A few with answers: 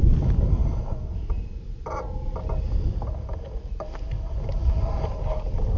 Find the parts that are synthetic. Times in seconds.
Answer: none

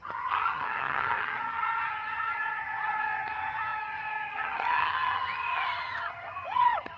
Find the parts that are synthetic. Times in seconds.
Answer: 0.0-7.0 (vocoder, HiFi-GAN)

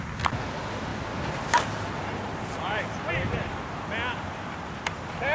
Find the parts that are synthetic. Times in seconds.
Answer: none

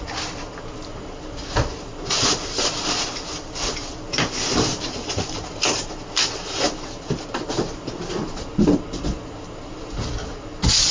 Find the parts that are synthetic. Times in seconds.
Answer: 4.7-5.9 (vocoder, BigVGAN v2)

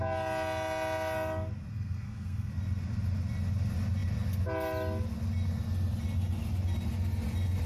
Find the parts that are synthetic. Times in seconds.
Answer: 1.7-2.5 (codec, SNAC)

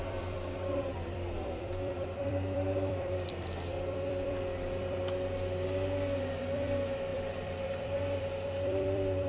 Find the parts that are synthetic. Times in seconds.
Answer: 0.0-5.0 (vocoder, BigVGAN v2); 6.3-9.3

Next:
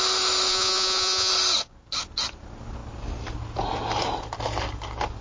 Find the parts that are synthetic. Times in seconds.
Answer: 0.5-1.3 (vocoder, Vocos)